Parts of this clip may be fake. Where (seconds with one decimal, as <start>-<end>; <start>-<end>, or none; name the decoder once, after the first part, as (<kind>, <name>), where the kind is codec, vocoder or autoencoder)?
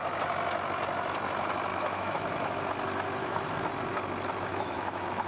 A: 1.7-2.7 (autoencoder, DAC-VAE); 3.2-3.7; 4.5-5.3